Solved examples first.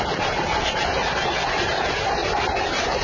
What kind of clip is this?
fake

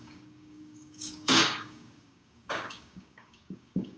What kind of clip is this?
fake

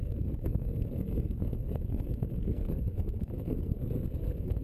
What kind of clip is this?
fake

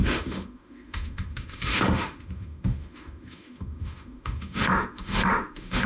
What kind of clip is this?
fake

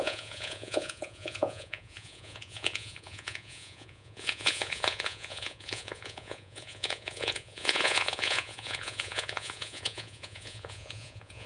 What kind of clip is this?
fake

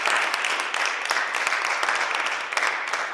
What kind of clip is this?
real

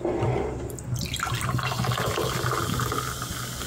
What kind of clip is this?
real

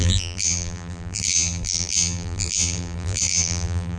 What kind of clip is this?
fake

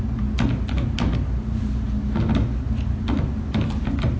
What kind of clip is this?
real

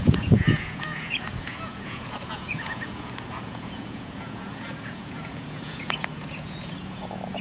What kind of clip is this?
fake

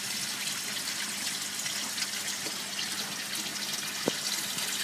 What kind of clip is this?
real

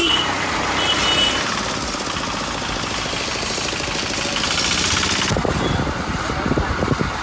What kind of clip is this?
real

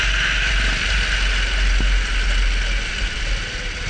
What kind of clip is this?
real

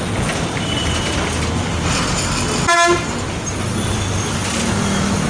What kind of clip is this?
real